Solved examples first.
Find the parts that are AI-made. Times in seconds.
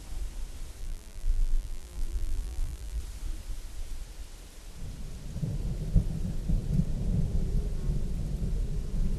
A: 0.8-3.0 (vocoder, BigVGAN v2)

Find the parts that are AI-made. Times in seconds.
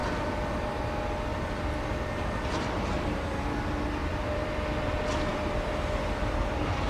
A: 0.0-0.6 (vocoder, BigVGAN v2); 1.3-1.9; 4.0-4.8; 5.3-6.9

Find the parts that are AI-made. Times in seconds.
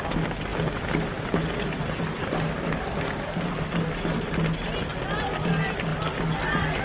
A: none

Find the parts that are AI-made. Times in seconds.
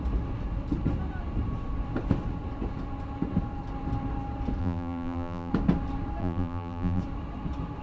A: 4.6-5.5 (vocoder, BigVGAN v2); 6.2-7.0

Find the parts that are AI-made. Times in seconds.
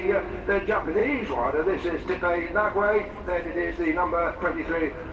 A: none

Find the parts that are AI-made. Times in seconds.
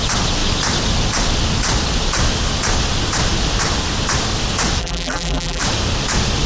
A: 4.8-5.6 (vocoder, BigVGAN v2)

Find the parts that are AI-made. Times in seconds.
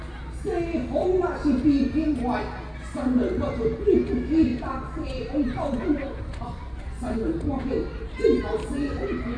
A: 4.5-6.9 (vocoder, BigVGAN v2)